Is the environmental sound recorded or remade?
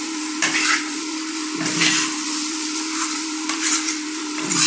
remade